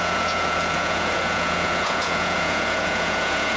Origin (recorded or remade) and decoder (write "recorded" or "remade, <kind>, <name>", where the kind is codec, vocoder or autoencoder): remade, vocoder, Vocos